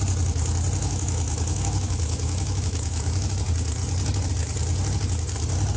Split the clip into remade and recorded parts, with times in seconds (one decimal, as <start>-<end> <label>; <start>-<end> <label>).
0.0-0.8 recorded; 0.8-3.3 remade; 3.3-5.8 recorded